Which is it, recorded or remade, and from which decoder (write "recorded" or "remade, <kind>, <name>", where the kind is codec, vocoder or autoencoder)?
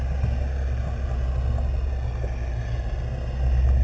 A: recorded